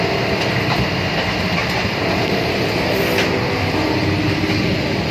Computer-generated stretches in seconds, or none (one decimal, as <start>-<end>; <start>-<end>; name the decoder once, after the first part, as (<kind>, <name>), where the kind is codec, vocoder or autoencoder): 1.6-3.0 (vocoder, BigVGAN v2)